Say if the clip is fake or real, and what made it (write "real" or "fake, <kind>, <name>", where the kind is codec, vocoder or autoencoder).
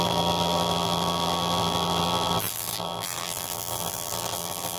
fake, vocoder, BigVGAN v2